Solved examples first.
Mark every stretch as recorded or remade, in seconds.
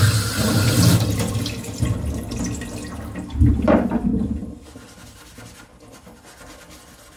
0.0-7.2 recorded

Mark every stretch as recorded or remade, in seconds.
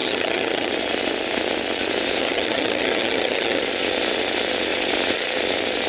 0.0-0.7 remade; 0.7-2.2 recorded; 2.2-3.6 remade; 3.6-5.9 recorded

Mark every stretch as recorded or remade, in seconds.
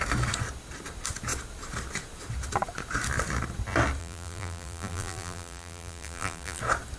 0.0-4.0 recorded; 4.0-6.6 remade; 6.6-7.0 recorded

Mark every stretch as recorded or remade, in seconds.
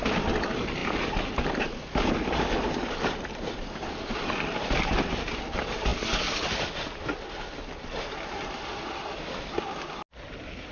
0.0-10.7 recorded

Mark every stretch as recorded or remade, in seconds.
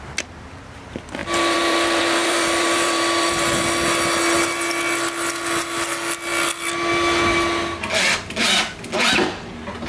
0.0-1.2 recorded; 1.2-3.6 remade; 3.6-9.9 recorded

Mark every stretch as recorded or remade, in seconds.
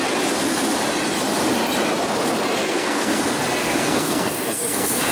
0.0-2.6 recorded; 2.6-3.2 remade; 3.2-3.6 recorded; 3.6-5.1 remade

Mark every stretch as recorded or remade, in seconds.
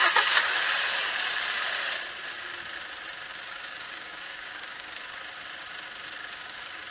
0.0-3.3 recorded; 3.3-5.2 remade; 5.2-6.2 recorded; 6.2-6.9 remade